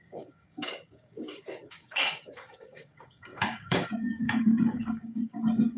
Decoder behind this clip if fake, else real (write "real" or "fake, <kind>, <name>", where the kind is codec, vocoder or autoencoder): fake, codec, DAC